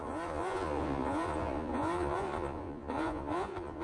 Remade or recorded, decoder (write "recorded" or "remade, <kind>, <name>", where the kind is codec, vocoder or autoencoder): remade, vocoder, Vocos